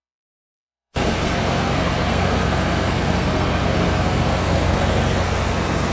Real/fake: fake